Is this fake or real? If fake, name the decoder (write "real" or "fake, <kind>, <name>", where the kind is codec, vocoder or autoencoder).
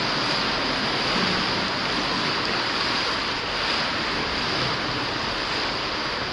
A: real